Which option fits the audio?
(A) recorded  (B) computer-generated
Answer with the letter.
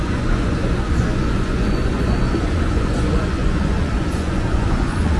B